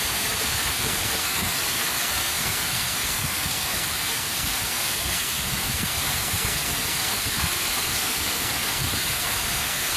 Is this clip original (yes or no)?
no